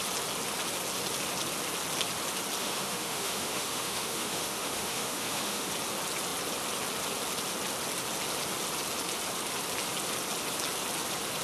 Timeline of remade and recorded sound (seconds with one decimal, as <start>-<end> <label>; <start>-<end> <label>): 0.0-2.6 recorded; 2.6-5.7 remade; 5.7-11.4 recorded